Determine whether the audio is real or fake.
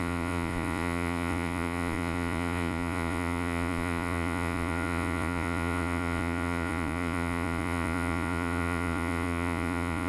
fake